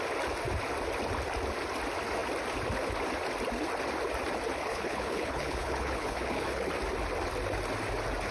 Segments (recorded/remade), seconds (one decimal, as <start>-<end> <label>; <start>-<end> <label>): 0.0-4.6 recorded; 4.6-6.6 remade; 6.6-8.3 recorded